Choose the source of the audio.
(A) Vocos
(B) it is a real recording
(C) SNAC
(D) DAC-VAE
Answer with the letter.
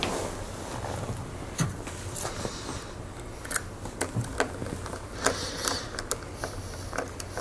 B